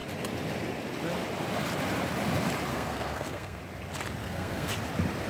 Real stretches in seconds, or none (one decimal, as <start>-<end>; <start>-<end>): 0.0-2.7; 3.6-4.2; 4.7-5.3